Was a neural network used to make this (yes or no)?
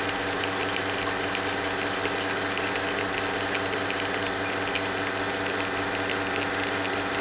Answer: no